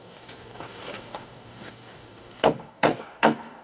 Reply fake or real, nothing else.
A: fake